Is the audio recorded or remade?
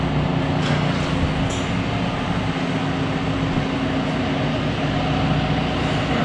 recorded